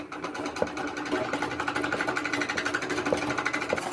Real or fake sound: real